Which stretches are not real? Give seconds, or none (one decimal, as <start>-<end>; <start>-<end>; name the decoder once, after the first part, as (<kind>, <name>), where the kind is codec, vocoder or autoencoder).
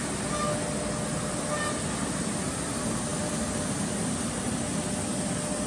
none